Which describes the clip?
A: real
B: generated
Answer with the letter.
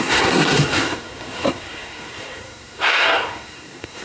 B